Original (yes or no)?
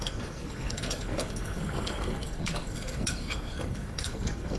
no